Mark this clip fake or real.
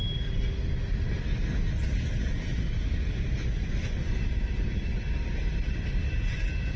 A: real